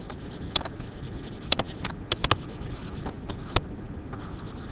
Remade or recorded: recorded